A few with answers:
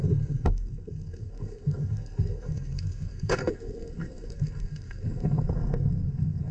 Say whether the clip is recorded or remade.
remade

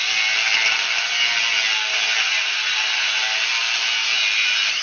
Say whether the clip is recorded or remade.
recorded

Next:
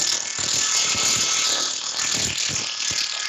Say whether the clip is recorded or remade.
recorded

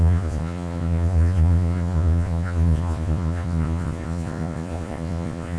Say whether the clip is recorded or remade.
remade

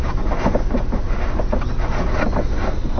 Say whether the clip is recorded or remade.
recorded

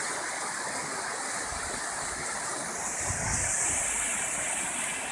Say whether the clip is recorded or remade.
recorded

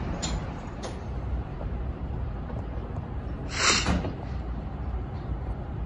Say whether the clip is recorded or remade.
remade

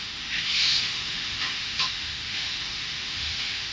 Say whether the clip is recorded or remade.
remade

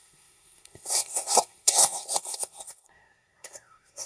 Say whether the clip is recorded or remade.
remade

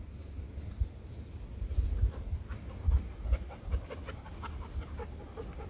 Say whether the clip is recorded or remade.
recorded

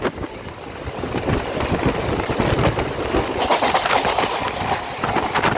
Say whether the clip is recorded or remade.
remade